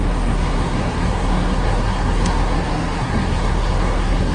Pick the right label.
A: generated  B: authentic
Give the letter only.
A